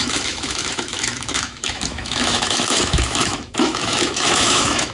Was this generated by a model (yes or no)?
yes